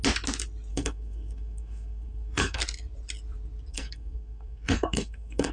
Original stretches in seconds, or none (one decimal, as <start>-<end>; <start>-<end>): 0.0-0.7; 2.6-3.7